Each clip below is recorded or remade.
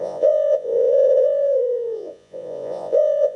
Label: remade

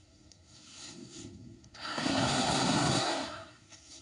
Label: remade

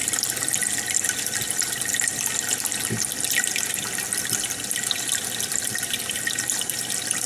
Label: recorded